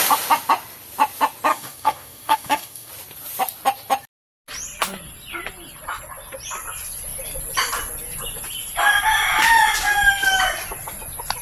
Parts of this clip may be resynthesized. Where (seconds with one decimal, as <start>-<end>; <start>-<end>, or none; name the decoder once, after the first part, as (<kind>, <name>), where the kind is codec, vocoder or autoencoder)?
1.5-2.9 (codec, DAC)